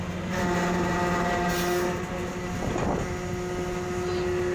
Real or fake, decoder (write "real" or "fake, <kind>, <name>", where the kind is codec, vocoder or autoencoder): real